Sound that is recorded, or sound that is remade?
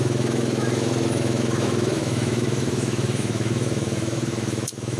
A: remade